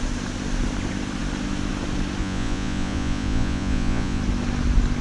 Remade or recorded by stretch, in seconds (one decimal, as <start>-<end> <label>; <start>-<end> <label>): 0.0-2.2 recorded; 2.2-4.2 remade; 4.2-5.0 recorded